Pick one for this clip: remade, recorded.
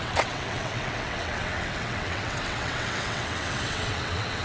remade